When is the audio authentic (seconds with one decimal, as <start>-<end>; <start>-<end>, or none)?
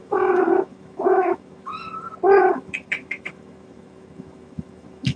1.7-2.4